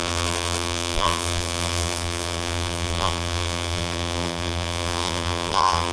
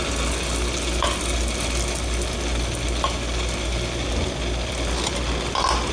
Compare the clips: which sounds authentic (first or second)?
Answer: second